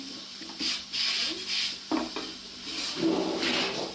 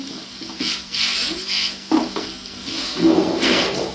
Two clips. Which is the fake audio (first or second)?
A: second